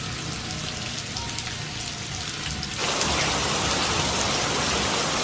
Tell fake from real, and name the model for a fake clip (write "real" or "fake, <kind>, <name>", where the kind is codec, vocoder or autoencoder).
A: real